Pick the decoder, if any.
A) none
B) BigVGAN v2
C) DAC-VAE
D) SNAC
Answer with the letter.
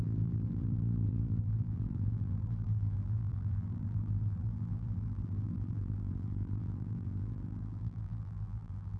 B